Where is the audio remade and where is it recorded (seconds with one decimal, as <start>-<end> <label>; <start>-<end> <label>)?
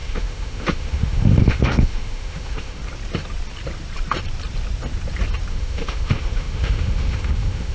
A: 0.0-2.8 remade; 2.8-5.5 recorded; 5.5-7.7 remade